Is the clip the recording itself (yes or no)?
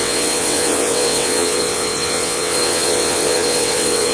no